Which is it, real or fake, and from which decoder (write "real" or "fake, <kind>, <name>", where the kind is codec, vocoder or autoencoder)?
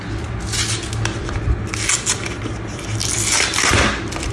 real